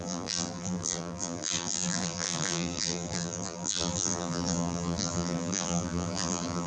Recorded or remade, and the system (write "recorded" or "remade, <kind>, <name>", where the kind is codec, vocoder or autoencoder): remade, vocoder, BigVGAN v2